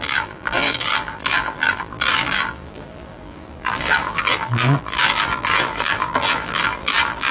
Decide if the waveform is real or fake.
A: fake